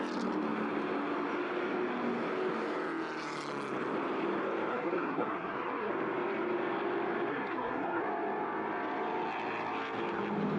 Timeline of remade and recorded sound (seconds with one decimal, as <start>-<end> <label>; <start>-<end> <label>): 0.0-4.7 recorded; 4.7-5.9 remade; 5.9-7.3 recorded; 7.3-8.0 remade; 8.0-10.6 recorded